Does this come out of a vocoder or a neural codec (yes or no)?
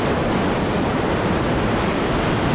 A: no